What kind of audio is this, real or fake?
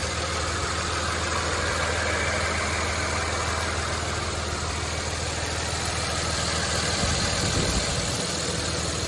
real